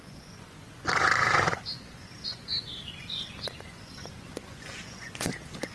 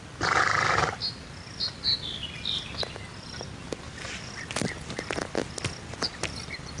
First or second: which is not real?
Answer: first